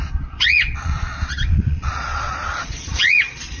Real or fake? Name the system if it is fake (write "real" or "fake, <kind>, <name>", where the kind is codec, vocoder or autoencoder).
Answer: fake, vocoder, Vocos